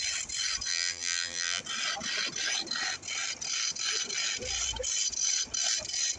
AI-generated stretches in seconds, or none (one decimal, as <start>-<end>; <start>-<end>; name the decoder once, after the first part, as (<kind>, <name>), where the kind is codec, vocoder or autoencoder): 0.7-1.6 (vocoder, BigVGAN v2)